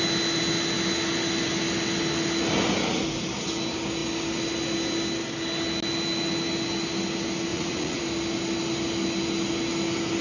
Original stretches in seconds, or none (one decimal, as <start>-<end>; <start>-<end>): 0.0-7.5; 8.0-10.2